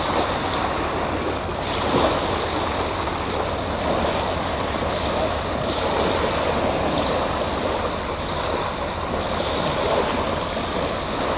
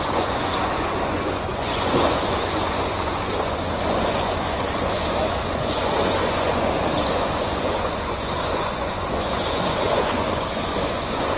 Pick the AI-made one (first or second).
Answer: second